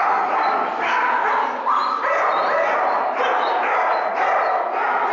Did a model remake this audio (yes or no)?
no